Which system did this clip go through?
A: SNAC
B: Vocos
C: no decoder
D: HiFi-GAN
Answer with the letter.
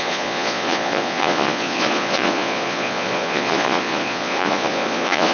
B